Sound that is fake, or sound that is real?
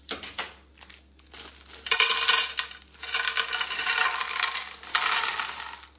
real